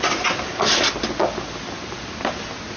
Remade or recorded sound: recorded